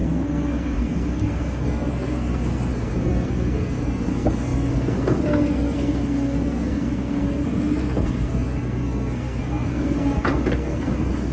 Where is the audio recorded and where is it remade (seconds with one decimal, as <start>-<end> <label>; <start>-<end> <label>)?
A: 0.0-11.3 remade